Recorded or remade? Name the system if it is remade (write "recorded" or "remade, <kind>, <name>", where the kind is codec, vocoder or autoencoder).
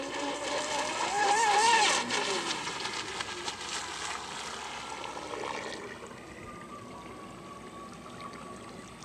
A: recorded